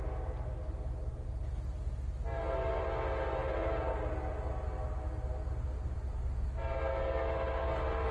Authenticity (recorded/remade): recorded